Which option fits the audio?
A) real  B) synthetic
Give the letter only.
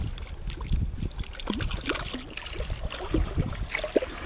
A